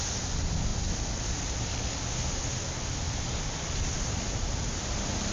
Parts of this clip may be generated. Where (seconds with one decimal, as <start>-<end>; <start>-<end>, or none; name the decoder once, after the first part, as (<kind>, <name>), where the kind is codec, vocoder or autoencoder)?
none

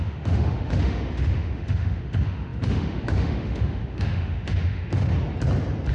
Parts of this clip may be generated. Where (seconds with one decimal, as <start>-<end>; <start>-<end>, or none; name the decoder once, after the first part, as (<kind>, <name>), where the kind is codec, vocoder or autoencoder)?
0.0-5.1 (autoencoder, DAC-VAE)

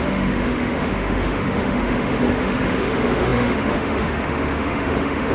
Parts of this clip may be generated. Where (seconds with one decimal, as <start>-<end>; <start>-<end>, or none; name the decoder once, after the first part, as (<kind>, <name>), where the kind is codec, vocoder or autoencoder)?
0.0-5.3 (autoencoder, DAC-VAE)

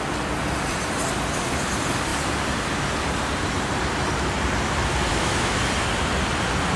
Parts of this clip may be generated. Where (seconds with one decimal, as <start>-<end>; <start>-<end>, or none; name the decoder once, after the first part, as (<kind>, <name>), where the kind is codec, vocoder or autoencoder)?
5.1-5.6 (autoencoder, DAC-VAE)

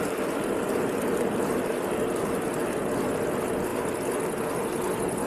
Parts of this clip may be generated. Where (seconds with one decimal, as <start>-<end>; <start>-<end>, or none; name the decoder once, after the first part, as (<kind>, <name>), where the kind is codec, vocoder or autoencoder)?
none

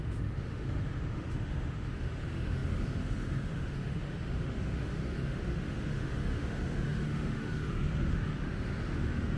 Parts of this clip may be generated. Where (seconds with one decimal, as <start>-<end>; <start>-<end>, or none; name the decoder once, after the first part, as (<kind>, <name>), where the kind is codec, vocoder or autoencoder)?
0.0-9.4 (autoencoder, DAC-VAE)